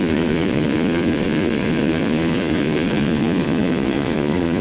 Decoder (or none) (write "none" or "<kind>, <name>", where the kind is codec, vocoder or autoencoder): vocoder, Vocos